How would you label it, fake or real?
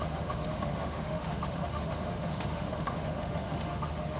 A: fake